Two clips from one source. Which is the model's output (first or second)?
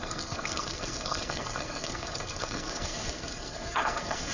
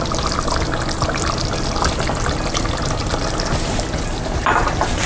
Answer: first